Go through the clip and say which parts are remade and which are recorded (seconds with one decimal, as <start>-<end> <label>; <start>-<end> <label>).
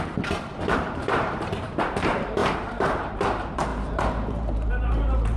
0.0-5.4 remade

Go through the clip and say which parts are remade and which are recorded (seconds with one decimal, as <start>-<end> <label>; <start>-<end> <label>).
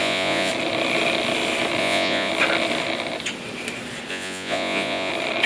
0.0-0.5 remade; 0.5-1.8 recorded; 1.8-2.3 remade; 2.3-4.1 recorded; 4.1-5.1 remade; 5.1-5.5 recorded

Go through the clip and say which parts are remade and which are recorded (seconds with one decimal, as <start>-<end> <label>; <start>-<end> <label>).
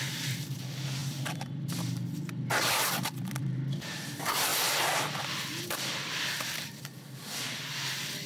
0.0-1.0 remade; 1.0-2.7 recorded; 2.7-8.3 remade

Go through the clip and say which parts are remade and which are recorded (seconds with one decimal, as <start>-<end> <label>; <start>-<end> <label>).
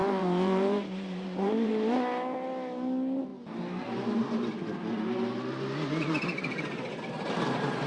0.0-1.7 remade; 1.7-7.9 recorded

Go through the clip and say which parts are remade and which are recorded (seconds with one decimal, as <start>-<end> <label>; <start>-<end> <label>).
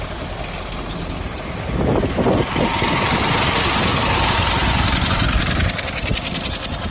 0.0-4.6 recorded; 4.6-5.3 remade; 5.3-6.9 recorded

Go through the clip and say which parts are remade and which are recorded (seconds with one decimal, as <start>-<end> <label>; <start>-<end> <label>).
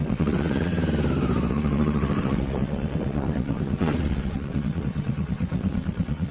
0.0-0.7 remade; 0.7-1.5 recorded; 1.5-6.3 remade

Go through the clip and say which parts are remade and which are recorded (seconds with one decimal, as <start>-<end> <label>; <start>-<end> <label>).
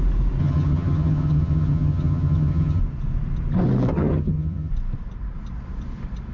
0.0-0.4 recorded; 0.4-2.8 remade; 2.8-3.9 recorded; 3.9-4.7 remade; 4.7-6.3 recorded